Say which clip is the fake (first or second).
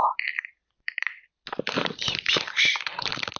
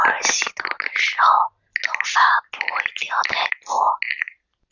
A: first